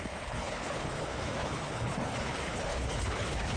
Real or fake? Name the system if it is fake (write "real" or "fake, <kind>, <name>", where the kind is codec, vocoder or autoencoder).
fake, codec, HILCodec